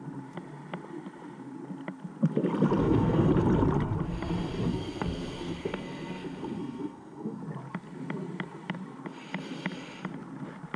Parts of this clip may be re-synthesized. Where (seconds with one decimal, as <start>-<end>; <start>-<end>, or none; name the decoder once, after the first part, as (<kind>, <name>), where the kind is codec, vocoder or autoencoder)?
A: 2.8-3.3 (codec, SNAC); 4.7-7.4